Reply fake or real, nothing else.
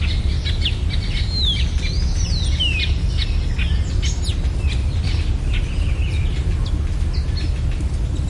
real